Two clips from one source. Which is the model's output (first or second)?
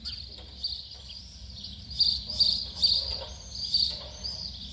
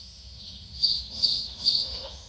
second